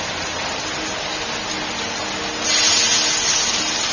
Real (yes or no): yes